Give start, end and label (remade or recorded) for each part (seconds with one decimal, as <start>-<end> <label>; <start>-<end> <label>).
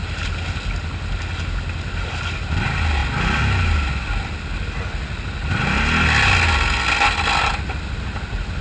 0.0-8.6 recorded